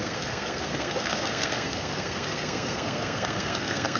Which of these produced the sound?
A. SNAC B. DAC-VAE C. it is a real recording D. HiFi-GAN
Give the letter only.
A